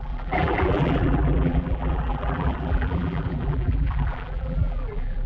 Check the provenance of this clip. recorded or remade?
remade